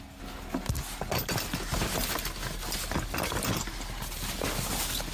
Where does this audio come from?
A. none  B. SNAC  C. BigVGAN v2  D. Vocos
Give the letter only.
A